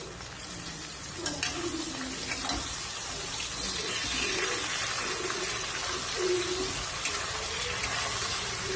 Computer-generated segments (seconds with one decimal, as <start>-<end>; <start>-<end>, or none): none